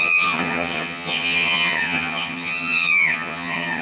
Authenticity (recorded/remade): remade